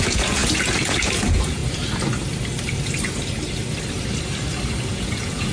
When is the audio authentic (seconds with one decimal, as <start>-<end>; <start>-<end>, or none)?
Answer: 1.6-4.9